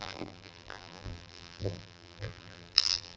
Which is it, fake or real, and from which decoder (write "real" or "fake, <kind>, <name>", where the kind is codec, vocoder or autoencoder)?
fake, vocoder, BigVGAN v2